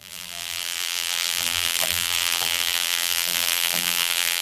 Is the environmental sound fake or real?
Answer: fake